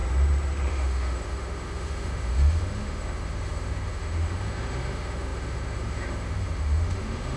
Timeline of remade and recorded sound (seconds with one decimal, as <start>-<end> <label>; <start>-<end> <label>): 0.0-0.7 recorded; 0.7-7.4 remade